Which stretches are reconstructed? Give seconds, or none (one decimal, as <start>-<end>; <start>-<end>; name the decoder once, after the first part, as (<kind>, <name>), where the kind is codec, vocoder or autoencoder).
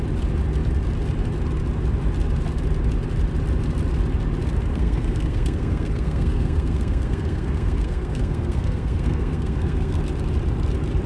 4.7-10.0 (codec, SNAC)